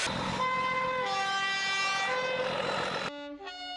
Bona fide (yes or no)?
yes